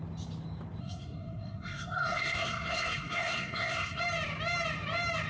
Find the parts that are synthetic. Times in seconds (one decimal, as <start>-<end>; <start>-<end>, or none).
0.8-4.0